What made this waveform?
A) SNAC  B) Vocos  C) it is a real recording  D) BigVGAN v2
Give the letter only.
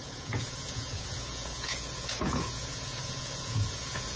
B